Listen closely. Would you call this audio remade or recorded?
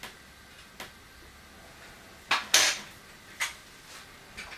recorded